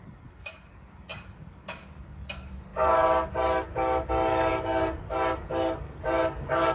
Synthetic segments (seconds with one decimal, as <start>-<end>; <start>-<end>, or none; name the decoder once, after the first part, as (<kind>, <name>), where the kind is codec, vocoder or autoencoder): 0.0-6.7 (codec, DAC)